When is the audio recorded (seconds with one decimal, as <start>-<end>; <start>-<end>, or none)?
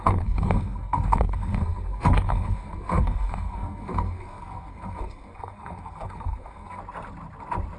6.8-7.8